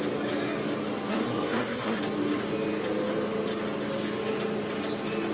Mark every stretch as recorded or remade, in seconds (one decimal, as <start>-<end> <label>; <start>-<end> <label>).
0.0-1.1 recorded; 1.1-2.0 remade; 2.0-5.3 recorded